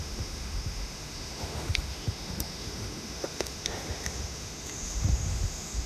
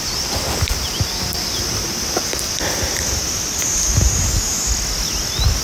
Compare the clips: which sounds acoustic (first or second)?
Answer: second